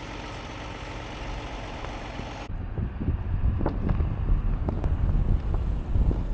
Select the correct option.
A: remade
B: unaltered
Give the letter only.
B